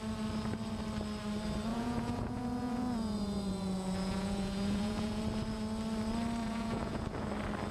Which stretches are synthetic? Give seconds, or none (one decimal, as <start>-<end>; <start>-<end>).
1.7-5.2; 6.4-7.3